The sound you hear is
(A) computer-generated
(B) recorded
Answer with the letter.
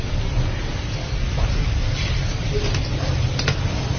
B